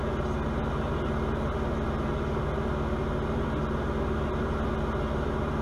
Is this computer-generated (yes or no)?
no